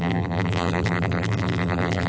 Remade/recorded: remade